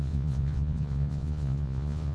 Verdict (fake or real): fake